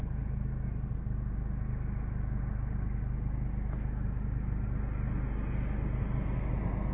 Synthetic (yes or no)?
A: no